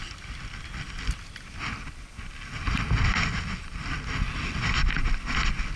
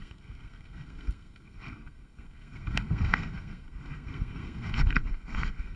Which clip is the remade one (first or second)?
second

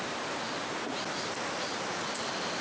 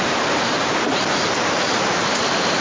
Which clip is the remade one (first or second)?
second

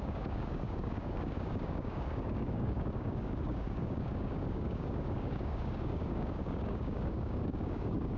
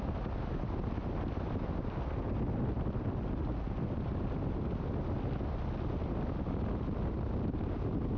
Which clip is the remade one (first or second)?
first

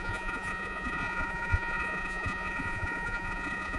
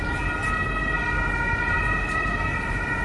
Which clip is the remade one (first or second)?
first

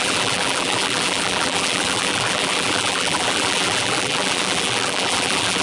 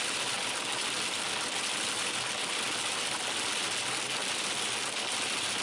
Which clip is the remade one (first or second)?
first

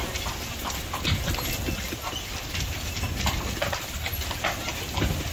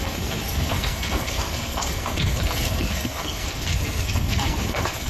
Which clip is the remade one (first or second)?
second